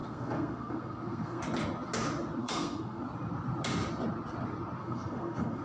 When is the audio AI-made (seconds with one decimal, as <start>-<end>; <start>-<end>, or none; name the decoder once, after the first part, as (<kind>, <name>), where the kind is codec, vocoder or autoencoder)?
0.0-1.4 (codec, SNAC); 2.4-3.0; 4.8-5.6